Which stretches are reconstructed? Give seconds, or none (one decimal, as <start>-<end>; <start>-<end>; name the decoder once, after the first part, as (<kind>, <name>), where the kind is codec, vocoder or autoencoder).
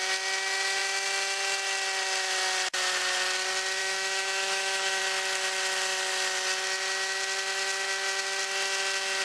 3.8-5.0 (autoencoder, DAC-VAE)